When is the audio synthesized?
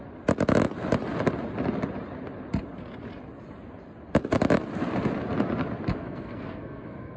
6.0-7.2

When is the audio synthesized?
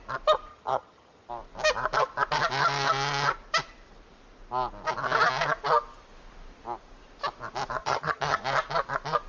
0.5-1.3; 7.8-8.4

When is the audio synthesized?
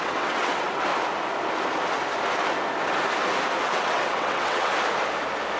0.0-0.9; 3.6-4.7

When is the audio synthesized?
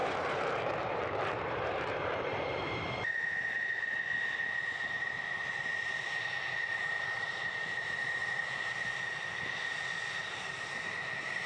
0.0-2.8; 6.7-8.4; 10.2-10.8